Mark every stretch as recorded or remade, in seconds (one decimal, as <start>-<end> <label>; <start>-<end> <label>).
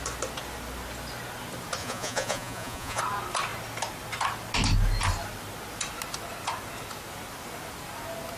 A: 0.0-1.8 recorded; 1.8-3.0 remade; 3.0-8.4 recorded